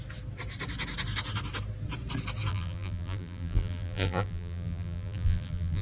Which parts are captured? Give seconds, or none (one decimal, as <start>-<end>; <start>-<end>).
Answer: 0.0-2.5